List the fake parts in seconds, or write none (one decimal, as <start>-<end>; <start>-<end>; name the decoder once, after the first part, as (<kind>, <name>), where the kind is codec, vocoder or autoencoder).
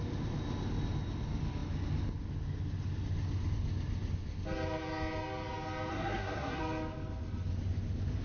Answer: 5.9-6.6 (codec, SNAC)